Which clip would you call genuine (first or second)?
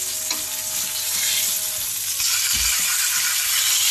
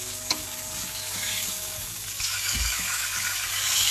first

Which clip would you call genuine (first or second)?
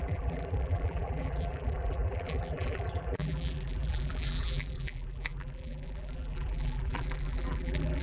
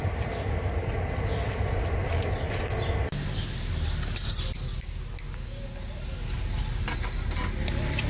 second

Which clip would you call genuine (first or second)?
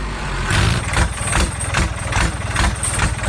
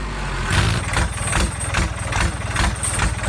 second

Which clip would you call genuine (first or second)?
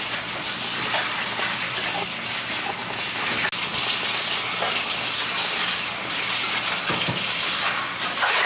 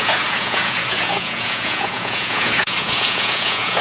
first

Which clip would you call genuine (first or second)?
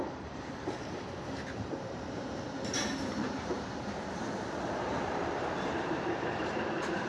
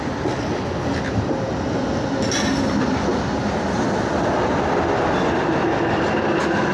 second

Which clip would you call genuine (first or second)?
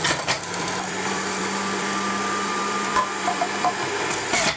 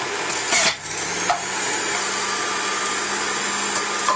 second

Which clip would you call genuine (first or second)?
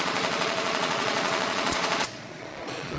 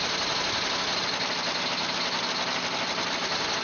second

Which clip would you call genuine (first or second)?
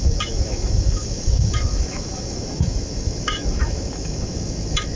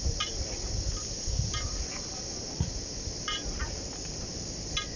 second